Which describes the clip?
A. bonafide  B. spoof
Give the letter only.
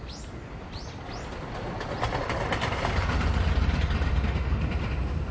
A